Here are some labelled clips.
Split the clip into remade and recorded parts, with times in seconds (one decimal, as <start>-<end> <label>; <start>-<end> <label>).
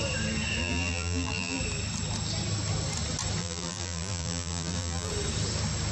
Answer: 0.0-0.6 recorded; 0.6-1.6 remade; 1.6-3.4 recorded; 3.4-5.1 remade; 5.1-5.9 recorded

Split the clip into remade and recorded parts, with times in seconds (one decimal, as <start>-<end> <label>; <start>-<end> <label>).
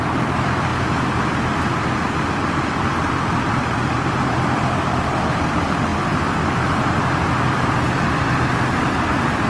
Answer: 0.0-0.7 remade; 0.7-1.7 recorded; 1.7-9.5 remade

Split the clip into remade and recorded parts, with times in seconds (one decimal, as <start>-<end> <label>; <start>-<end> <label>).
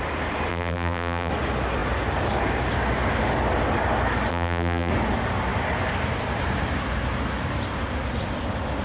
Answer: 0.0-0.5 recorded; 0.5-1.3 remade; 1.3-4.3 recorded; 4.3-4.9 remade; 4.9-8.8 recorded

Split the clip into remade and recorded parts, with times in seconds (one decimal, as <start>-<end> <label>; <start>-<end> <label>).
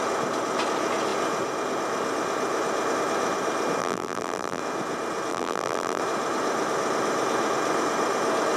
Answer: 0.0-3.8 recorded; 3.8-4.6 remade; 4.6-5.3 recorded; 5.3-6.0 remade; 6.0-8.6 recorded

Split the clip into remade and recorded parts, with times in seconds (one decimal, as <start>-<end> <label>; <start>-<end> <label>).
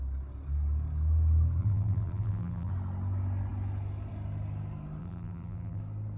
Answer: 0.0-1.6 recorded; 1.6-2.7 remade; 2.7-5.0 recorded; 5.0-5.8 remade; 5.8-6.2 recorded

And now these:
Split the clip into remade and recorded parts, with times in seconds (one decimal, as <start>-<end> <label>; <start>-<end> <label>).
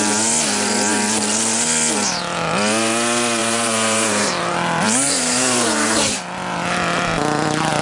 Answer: 0.0-3.4 recorded; 3.4-6.2 remade; 6.2-7.8 recorded